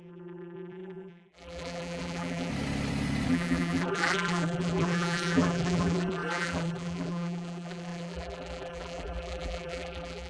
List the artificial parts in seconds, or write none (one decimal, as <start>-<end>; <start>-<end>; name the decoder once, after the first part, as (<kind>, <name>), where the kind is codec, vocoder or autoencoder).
0.0-2.5 (vocoder, BigVGAN v2); 3.3-10.3